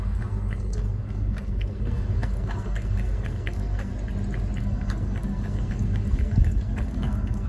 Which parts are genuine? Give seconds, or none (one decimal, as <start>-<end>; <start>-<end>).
3.9-4.6